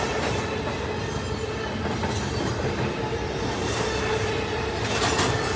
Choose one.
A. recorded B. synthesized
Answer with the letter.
A